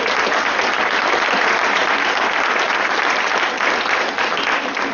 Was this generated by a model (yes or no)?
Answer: no